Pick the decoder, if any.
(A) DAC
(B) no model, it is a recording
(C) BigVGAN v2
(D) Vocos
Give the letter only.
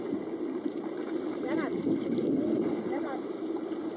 C